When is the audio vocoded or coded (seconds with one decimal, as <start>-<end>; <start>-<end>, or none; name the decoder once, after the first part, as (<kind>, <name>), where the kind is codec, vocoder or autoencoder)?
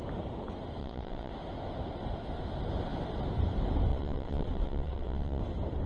0.8-1.3 (vocoder, WaveNeXt); 3.9-5.4